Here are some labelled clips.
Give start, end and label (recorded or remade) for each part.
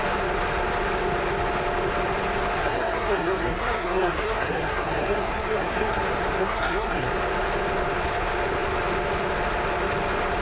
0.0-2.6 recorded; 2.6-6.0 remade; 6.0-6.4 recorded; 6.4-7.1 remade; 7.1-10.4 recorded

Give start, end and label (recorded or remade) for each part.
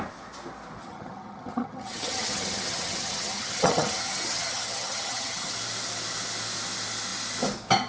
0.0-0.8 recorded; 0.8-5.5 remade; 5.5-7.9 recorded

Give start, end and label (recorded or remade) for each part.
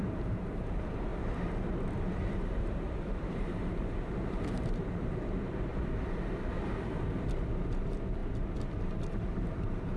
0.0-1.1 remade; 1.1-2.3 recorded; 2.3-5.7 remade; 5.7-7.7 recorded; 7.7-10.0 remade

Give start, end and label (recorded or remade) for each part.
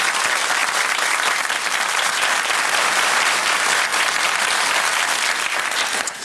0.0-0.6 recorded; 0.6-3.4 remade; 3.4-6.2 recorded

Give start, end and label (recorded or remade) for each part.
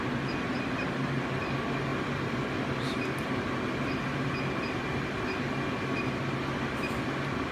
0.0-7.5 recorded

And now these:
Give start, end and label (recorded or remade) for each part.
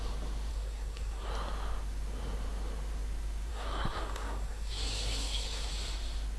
0.0-0.5 recorded; 0.5-1.3 remade; 1.3-3.5 recorded; 3.5-5.7 remade; 5.7-6.4 recorded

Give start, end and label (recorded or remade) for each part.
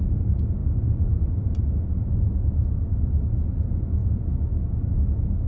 0.0-5.5 recorded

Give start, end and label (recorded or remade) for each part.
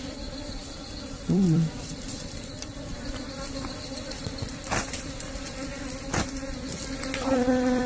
0.0-7.9 remade